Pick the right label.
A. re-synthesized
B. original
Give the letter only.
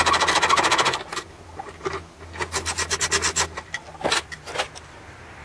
B